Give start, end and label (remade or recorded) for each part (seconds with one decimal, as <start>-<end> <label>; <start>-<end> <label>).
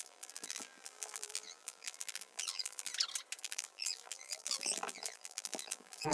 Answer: 0.0-2.9 remade; 2.9-3.4 recorded; 3.4-6.1 remade